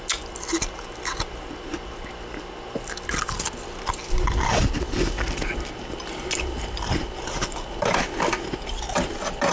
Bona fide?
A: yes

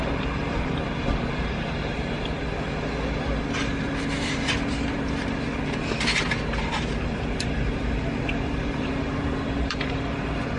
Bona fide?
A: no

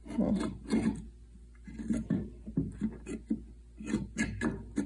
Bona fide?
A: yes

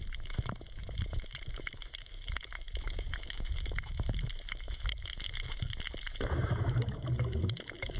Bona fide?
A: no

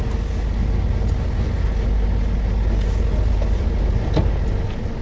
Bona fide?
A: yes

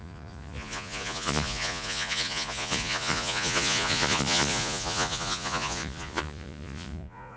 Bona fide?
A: no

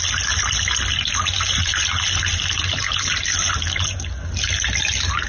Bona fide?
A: yes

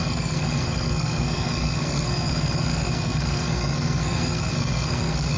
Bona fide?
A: no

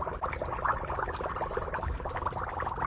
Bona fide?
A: yes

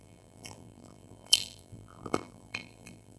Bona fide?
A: no